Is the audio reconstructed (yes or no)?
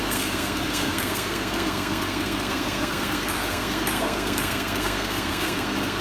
yes